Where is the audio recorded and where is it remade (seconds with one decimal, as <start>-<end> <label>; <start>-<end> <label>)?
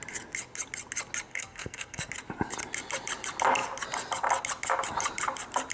0.0-1.3 recorded; 1.3-2.1 remade; 2.1-5.7 recorded